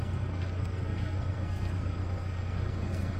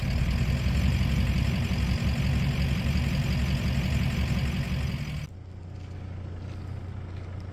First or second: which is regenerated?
first